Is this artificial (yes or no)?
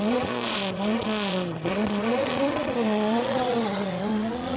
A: yes